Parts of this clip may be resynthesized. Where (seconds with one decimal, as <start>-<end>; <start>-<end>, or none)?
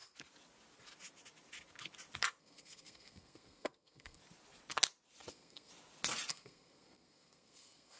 2.4-4.2; 5.3-5.7; 6.3-8.0